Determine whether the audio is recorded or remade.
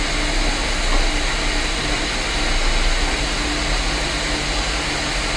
recorded